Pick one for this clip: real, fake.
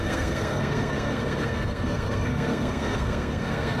fake